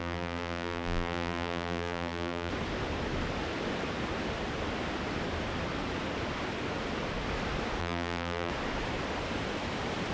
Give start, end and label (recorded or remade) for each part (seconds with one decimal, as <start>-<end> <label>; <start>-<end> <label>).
0.0-2.5 remade; 2.5-7.8 recorded; 7.8-8.5 remade; 8.5-10.1 recorded